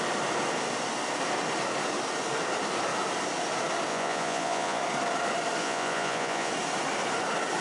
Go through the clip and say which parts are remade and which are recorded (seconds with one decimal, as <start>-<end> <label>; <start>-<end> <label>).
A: 0.0-3.9 recorded; 3.9-4.8 remade; 4.8-5.6 recorded; 5.6-6.5 remade; 6.5-7.6 recorded